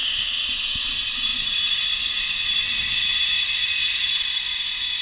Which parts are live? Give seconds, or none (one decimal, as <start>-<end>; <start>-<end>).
0.0-5.0